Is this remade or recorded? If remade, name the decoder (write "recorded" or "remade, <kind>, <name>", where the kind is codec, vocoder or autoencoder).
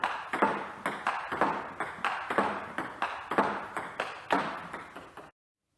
recorded